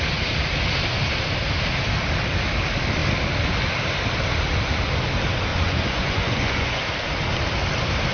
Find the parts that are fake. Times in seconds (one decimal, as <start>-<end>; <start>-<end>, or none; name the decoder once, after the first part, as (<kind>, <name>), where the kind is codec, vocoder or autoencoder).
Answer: 5.5-6.8 (vocoder, Vocos)